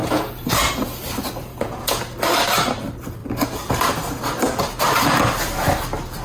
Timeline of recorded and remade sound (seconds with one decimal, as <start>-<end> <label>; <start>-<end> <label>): 0.0-0.7 remade; 0.7-1.5 recorded; 1.5-2.0 remade; 2.0-6.2 recorded